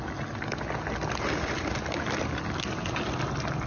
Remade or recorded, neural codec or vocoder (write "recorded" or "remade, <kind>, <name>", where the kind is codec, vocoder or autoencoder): recorded